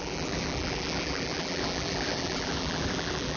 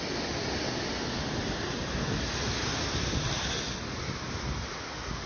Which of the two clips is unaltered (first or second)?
second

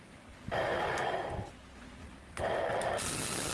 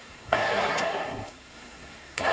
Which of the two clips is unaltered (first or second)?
first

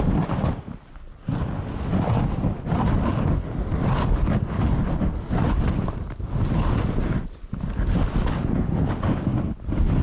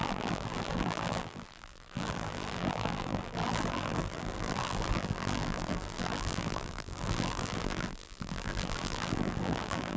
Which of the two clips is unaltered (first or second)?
first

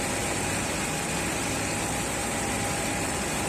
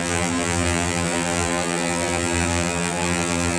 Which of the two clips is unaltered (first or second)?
first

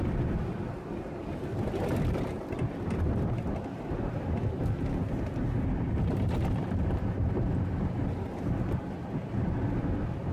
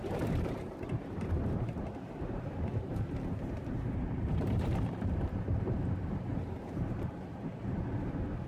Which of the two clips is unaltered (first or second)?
first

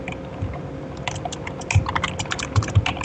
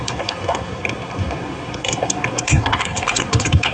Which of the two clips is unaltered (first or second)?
first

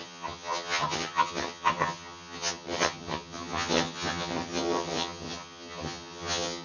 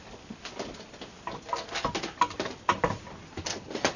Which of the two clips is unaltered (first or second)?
second